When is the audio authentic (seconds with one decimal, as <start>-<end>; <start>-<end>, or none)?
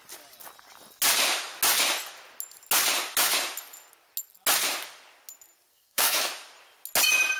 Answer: 0.0-5.7; 6.3-7.4